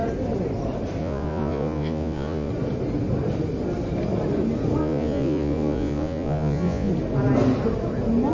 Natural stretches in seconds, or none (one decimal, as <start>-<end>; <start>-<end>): 0.0-1.0; 2.5-4.8; 6.9-8.3